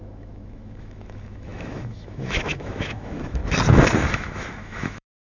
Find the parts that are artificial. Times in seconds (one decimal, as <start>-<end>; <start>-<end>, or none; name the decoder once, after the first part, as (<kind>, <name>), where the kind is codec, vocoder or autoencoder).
0.0-3.4 (autoencoder, DAC-VAE); 4.1-5.3